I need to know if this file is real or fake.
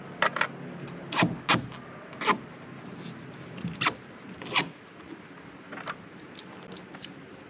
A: real